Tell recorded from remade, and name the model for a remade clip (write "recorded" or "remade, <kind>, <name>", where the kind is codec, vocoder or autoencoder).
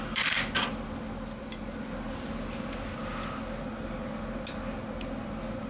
recorded